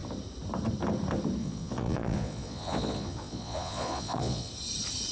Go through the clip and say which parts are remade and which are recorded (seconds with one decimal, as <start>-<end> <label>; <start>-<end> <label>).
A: 0.0-1.4 recorded; 1.4-4.5 remade; 4.5-5.1 recorded

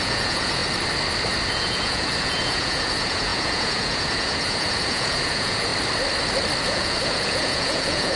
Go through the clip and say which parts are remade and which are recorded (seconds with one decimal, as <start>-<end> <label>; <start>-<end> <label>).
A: 0.0-0.6 remade; 0.6-1.5 recorded; 1.5-5.7 remade; 5.7-6.6 recorded; 6.6-8.2 remade